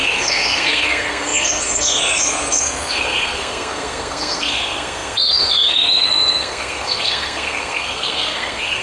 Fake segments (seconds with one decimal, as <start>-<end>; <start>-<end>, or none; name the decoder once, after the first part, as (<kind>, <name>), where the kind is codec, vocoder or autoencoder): 0.0-8.8 (codec, SNAC)

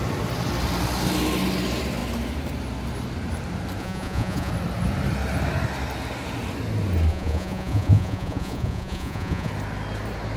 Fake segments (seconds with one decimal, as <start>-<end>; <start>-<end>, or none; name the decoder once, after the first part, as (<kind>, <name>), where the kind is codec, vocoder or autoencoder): 3.8-4.5 (vocoder, Vocos); 7.1-9.5

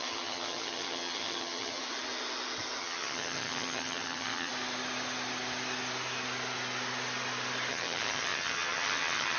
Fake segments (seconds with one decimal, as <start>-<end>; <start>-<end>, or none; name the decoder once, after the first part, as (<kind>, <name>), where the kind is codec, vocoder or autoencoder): 0.0-1.8 (vocoder, HiFi-GAN); 2.8-4.5; 7.7-9.4